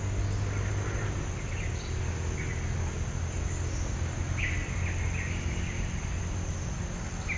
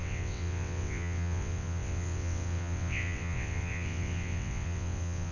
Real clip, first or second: first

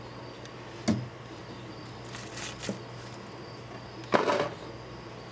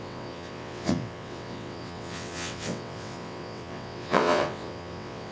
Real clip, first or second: first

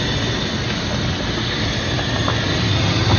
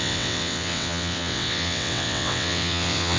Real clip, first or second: first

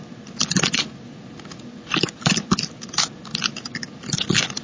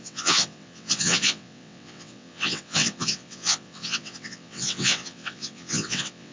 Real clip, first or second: first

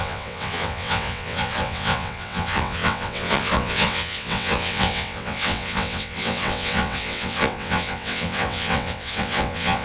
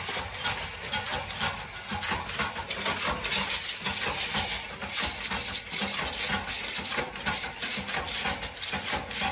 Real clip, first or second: second